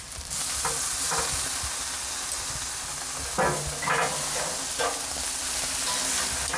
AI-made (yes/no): no